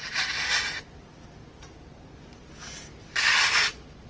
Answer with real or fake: real